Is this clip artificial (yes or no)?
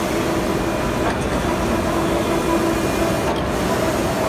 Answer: no